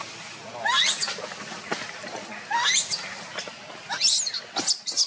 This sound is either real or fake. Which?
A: real